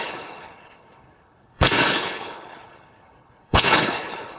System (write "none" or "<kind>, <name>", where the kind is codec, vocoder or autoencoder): codec, HILCodec